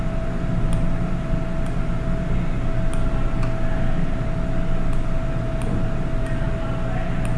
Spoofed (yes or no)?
no